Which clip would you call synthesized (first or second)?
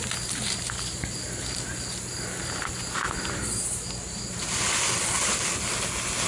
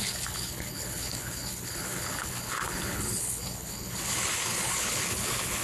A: second